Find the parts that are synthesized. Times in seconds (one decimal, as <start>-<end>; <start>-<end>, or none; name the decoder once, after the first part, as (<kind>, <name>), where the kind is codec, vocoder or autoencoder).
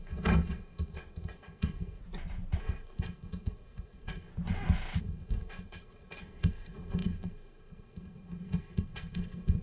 0.0-2.0 (codec, SNAC); 2.6-4.3; 5.0-9.6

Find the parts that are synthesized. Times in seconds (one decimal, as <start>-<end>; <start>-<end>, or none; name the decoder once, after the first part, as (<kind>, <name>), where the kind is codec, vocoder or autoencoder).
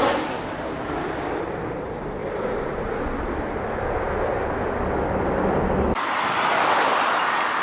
none